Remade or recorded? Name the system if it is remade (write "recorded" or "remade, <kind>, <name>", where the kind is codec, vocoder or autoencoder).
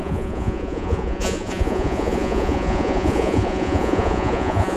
remade, vocoder, Vocos